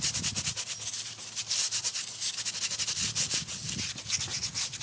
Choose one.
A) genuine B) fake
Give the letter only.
A